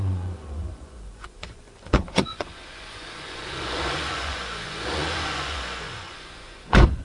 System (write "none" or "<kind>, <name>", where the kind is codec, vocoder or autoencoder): vocoder, Vocos